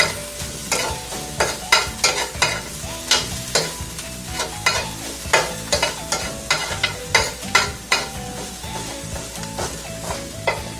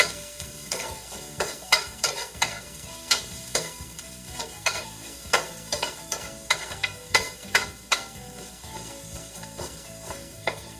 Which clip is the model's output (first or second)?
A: second